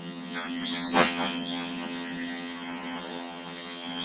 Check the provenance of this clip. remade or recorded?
remade